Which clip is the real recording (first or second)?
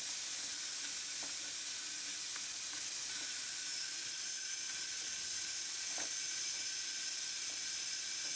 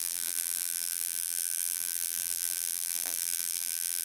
first